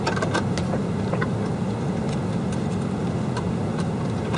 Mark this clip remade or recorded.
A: recorded